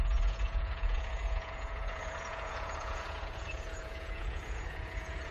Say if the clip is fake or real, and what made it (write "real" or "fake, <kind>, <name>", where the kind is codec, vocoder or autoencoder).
fake, vocoder, Vocos